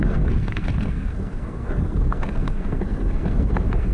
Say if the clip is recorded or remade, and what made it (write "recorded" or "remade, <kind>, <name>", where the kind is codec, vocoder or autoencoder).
remade, codec, SNAC